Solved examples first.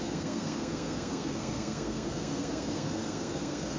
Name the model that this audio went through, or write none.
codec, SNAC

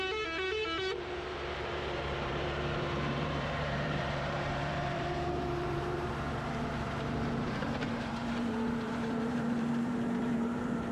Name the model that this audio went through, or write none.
vocoder, BigVGAN v2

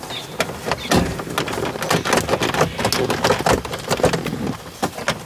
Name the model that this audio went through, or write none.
none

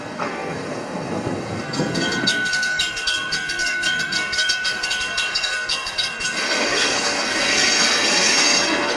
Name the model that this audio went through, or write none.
codec, SNAC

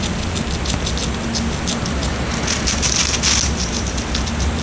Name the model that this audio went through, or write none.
none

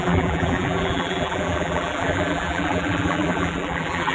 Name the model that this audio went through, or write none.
vocoder, BigVGAN v2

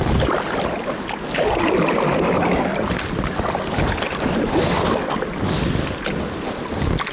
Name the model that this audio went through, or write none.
none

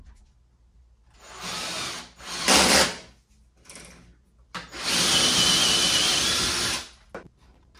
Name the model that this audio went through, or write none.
none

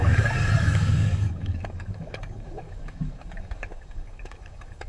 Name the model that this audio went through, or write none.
codec, DAC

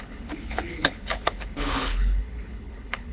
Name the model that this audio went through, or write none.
codec, HILCodec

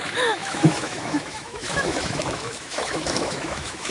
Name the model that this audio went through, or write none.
autoencoder, DAC-VAE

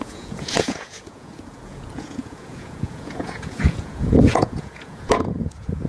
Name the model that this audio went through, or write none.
vocoder, Vocos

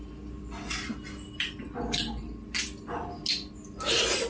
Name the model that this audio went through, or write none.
none